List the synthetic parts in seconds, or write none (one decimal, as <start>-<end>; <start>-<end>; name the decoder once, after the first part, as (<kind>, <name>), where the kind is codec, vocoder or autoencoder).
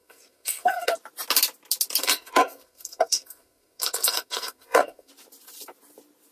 0.0-0.9 (codec, SNAC); 2.0-5.1